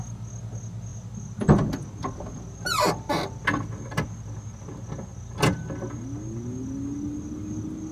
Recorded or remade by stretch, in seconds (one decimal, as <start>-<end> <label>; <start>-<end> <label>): 0.0-7.9 recorded